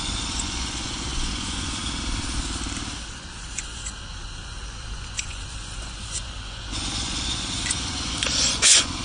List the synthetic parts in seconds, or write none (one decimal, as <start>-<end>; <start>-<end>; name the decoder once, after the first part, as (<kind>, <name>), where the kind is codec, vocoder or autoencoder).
0.0-1.8 (vocoder, Vocos); 3.1-9.0